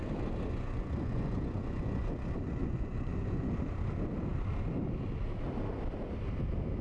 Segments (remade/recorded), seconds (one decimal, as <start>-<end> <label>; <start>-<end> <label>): 0.0-0.5 recorded; 0.5-2.1 remade; 2.1-2.6 recorded; 2.6-3.5 remade; 3.5-6.8 recorded